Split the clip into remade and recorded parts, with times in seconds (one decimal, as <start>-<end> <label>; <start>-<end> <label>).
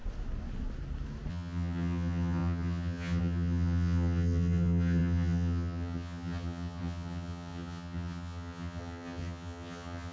0.0-1.3 recorded; 1.3-10.1 remade